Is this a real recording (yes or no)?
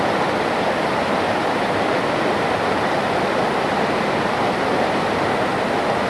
yes